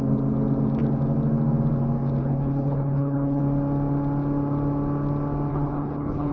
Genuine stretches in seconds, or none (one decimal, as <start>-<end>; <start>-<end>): 0.0-2.2; 3.4-5.5